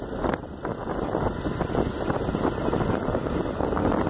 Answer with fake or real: real